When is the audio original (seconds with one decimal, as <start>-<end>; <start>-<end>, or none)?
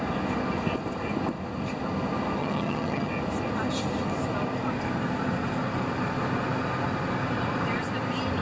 0.0-2.4; 3.1-8.4